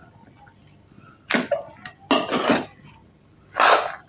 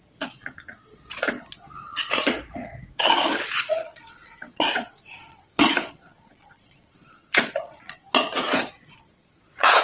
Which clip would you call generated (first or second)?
second